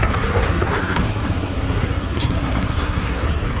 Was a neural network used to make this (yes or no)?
yes